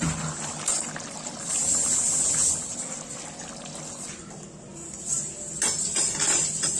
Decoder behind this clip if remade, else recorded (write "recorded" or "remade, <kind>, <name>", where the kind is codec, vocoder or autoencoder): recorded